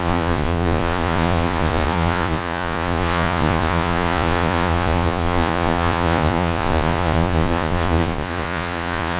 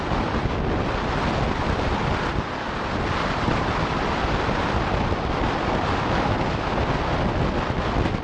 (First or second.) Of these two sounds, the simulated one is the first